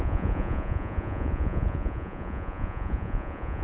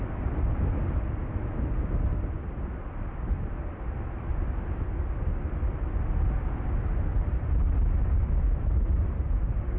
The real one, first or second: second